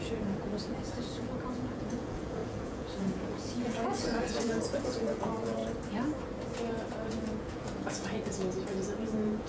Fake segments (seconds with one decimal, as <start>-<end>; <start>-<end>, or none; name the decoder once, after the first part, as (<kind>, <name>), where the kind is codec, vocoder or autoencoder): 0.0-5.6 (vocoder, Vocos); 7.1-9.5